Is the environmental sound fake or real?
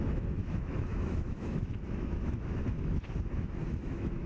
fake